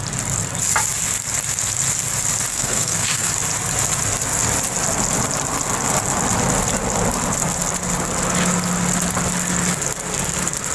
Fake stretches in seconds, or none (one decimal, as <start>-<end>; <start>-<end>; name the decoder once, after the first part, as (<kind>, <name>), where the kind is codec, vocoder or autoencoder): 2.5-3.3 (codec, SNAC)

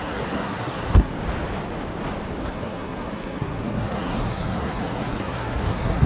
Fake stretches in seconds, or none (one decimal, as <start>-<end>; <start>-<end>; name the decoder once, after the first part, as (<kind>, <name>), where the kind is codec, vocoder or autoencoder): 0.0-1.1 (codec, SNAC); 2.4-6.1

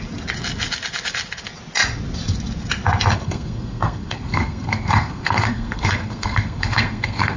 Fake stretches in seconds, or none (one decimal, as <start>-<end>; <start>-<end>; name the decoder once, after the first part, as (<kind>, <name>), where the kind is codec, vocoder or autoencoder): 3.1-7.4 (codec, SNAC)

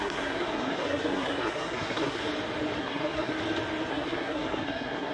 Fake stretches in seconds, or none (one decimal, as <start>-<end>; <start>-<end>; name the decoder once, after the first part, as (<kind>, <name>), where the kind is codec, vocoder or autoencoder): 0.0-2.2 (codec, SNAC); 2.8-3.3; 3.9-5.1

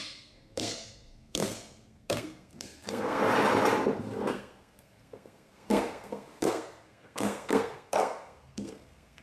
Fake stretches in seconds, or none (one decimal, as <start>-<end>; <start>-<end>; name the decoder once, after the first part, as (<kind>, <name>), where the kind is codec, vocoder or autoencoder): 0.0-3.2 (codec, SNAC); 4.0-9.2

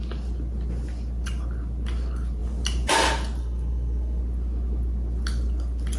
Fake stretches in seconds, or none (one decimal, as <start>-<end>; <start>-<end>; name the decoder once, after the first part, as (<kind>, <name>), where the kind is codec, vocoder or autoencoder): 3.4-4.2 (codec, SNAC)

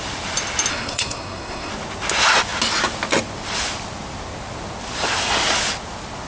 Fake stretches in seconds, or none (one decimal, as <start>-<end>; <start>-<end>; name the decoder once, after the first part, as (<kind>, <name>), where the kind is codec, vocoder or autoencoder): 0.7-1.7 (codec, SNAC)